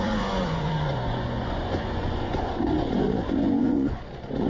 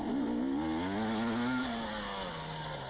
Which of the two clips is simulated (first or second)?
first